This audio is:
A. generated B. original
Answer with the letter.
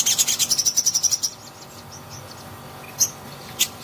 B